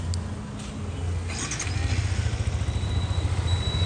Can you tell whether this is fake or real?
real